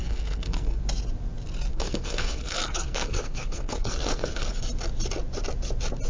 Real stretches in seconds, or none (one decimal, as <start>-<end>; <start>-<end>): 0.8-1.7; 4.5-6.1